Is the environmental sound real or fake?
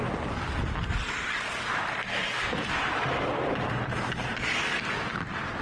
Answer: real